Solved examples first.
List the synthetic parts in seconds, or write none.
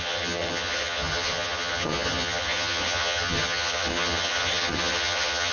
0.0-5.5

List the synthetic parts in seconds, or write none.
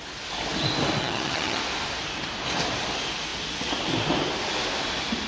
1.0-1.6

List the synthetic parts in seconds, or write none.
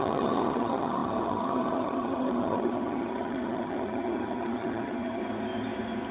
0.0-5.2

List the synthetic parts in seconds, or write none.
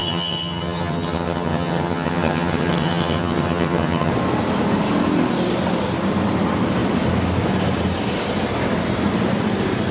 0.0-4.1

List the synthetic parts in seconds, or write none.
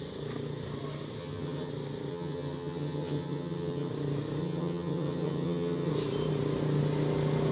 1.2-1.7; 2.1-3.9; 4.4-5.9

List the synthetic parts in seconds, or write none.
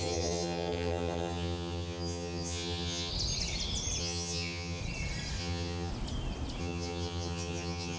0.0-3.1; 4.0-4.8; 5.4-5.9; 6.6-8.0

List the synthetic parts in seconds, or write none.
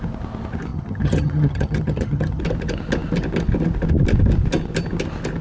0.7-2.4